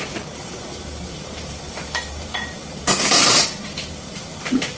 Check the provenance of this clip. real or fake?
fake